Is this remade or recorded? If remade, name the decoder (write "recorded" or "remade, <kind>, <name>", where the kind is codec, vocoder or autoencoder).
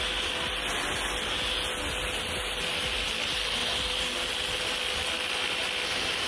recorded